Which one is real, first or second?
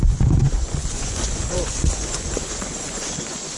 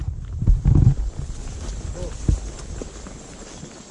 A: second